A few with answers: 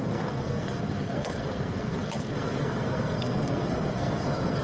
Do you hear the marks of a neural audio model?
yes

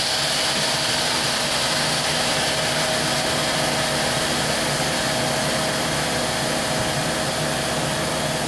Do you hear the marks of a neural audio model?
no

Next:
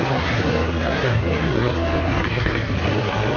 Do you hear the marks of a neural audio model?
yes